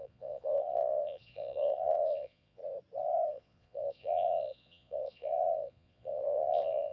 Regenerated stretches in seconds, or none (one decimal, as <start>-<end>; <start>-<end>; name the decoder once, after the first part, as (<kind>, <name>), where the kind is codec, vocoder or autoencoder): 0.0-2.6 (vocoder, Vocos); 3.3-6.9